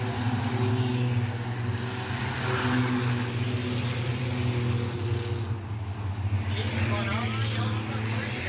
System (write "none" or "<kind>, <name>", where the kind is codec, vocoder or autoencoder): none